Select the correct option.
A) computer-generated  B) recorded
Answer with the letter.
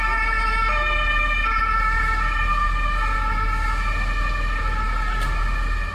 B